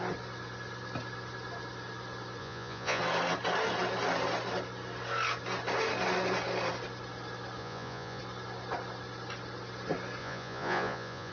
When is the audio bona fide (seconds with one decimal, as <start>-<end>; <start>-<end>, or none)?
0.0-2.4; 3.0-7.6; 8.2-10.2